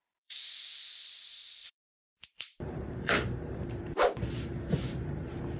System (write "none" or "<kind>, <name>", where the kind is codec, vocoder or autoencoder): vocoder, BigVGAN v2